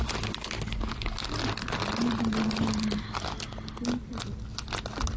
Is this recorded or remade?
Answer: recorded